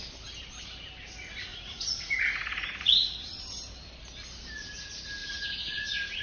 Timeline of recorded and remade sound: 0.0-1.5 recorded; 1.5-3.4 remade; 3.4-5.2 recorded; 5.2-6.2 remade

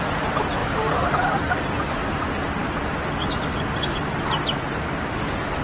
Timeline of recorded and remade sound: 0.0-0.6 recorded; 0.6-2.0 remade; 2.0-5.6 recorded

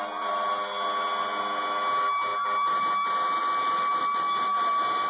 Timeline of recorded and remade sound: 0.0-5.1 recorded

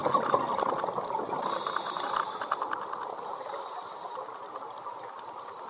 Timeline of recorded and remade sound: 0.0-5.7 recorded

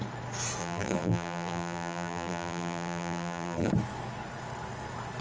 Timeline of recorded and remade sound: 0.0-0.6 recorded; 0.6-3.7 remade; 3.7-5.2 recorded